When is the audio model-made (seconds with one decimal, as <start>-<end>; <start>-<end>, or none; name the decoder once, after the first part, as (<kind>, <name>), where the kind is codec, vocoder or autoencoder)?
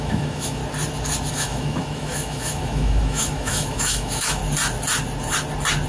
0.0-0.6 (autoencoder, DAC-VAE); 1.3-4.4